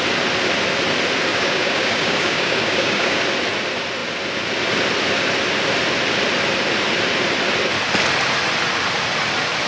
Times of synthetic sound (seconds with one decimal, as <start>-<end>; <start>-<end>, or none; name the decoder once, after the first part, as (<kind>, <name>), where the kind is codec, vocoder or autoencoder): 1.3-3.2 (codec, DAC)